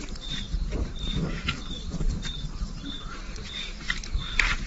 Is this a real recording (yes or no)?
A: no